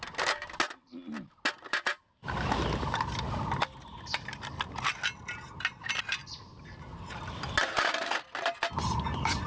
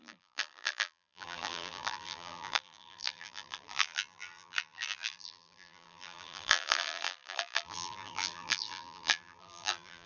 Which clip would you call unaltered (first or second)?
first